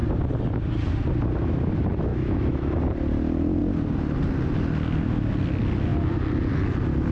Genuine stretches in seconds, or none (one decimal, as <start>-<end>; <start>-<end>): 0.0-2.1; 2.8-7.1